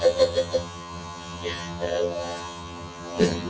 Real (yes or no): no